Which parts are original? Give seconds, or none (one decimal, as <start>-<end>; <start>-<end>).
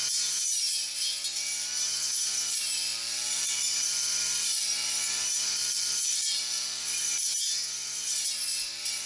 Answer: 0.0-2.9; 4.9-5.6; 7.0-9.1